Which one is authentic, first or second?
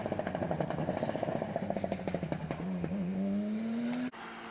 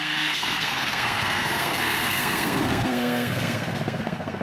first